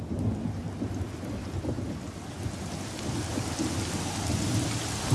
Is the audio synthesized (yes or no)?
no